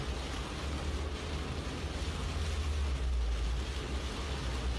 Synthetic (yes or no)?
no